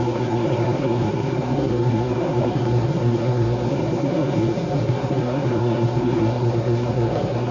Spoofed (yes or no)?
yes